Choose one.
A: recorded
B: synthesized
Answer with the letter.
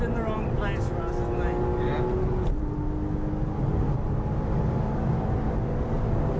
A